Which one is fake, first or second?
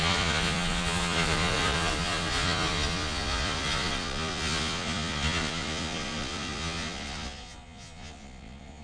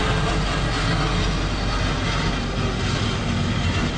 first